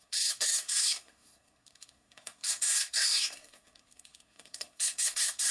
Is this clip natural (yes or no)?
no